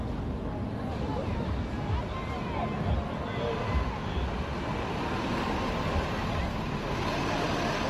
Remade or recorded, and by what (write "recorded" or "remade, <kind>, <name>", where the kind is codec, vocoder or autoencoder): recorded